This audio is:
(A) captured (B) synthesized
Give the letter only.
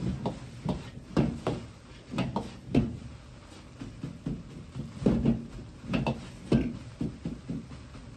A